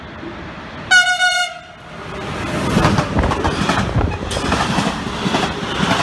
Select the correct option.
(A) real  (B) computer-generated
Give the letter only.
A